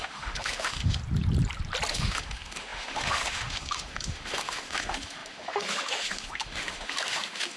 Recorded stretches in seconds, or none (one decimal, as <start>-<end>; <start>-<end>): 1.0-1.9

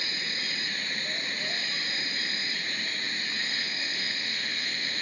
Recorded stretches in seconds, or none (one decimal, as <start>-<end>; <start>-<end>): 0.0-3.4

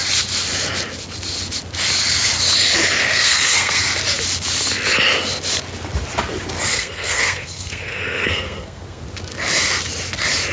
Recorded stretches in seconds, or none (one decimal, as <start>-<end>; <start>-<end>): 0.0-3.1; 3.8-6.7; 9.0-10.5

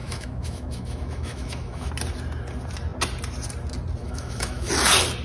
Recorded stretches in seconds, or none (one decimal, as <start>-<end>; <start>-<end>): 1.9-4.0; 4.7-5.2

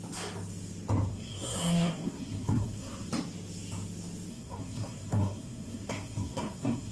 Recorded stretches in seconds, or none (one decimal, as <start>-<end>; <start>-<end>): 0.0-1.1; 3.1-4.3

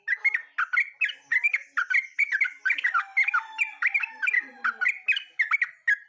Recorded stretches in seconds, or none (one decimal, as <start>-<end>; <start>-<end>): 0.0-1.3; 5.0-6.1

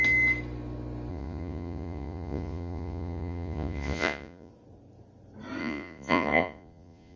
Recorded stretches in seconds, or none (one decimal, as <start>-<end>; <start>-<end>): 0.0-1.1; 4.5-5.6